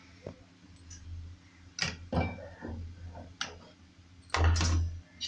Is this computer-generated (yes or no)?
no